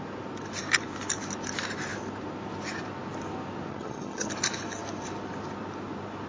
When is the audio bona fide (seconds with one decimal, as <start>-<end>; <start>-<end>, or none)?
0.0-3.7; 4.3-6.3

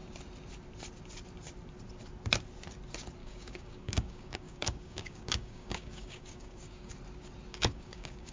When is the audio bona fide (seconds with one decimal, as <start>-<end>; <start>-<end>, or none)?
0.0-3.2; 6.9-7.5